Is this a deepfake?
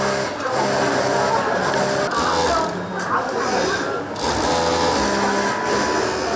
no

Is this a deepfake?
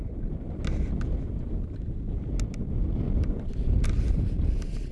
no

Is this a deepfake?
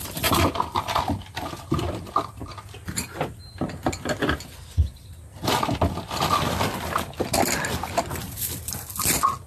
yes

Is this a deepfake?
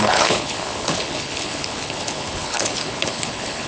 yes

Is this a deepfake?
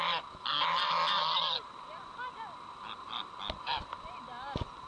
no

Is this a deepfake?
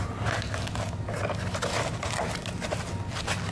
no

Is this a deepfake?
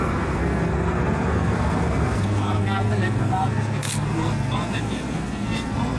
yes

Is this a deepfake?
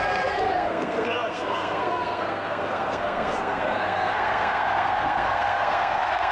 yes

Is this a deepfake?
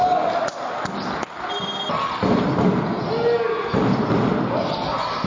no